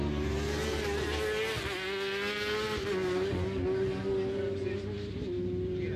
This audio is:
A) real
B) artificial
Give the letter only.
A